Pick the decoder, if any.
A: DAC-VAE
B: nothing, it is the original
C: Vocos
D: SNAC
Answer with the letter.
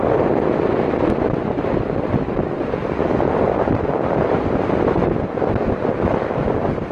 B